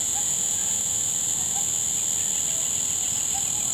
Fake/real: real